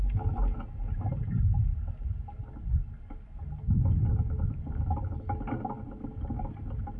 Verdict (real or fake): real